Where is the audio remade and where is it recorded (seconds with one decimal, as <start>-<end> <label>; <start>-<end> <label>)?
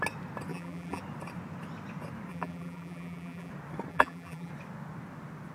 0.0-0.5 recorded; 0.5-1.0 remade; 1.0-2.3 recorded; 2.3-3.5 remade; 3.5-3.9 recorded; 3.9-4.5 remade; 4.5-5.5 recorded